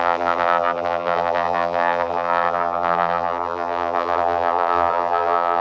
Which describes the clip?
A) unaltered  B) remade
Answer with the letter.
B